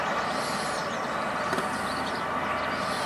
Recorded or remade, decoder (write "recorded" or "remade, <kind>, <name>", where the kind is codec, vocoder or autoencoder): recorded